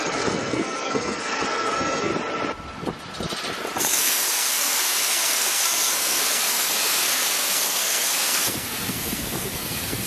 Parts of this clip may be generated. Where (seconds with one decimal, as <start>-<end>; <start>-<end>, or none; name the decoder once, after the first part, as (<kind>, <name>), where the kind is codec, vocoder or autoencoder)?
0.0-2.1 (codec, SNAC); 3.8-10.1